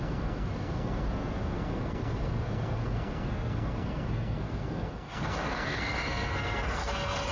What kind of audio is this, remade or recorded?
remade